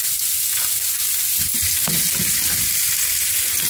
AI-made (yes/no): no